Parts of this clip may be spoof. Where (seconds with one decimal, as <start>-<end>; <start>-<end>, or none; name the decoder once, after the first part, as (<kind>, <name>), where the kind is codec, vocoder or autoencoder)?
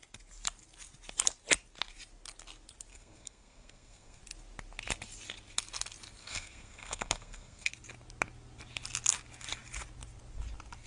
2.9-4.2 (codec, SNAC); 6.2-7.7